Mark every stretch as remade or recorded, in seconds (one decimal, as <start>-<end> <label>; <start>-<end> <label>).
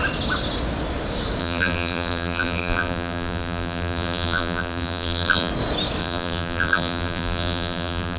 0.0-1.4 recorded; 1.4-5.5 remade; 5.5-6.0 recorded; 6.0-8.2 remade